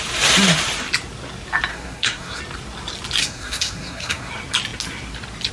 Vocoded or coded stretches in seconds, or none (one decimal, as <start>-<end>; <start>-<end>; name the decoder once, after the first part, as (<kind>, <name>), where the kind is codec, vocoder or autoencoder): 1.7-2.4 (codec, SNAC); 3.2-4.3